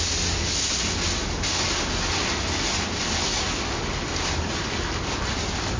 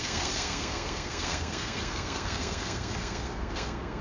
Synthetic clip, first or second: second